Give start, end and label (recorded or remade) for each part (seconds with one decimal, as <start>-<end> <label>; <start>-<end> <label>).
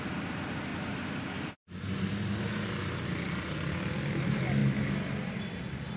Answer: 0.0-6.0 recorded